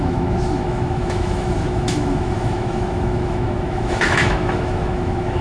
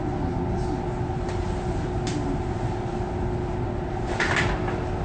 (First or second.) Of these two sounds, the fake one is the first